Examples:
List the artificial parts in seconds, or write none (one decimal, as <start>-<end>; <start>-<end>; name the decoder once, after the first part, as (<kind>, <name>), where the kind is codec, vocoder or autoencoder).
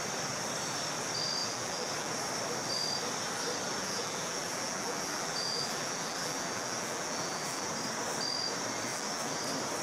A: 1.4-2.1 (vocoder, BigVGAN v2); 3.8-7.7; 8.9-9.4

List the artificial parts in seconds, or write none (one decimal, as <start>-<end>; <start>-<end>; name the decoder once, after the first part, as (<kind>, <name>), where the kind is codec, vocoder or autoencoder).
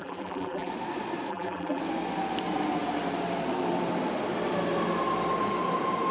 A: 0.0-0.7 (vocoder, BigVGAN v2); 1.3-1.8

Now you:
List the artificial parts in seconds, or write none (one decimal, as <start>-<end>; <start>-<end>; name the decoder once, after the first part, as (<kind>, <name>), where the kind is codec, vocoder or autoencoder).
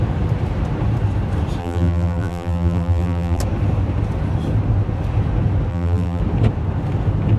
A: 1.6-3.4 (vocoder, BigVGAN v2); 5.7-6.2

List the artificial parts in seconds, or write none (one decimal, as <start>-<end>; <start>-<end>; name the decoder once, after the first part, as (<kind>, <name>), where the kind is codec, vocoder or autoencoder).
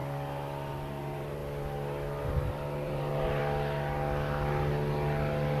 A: 0.7-1.4 (vocoder, BigVGAN v2); 2.5-3.4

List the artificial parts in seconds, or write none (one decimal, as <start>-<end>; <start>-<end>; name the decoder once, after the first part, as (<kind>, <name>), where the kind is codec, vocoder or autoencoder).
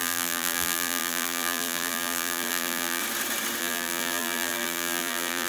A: 0.0-3.0 (vocoder, BigVGAN v2); 3.6-5.5